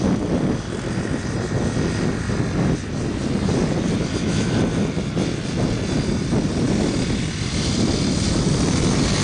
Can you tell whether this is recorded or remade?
recorded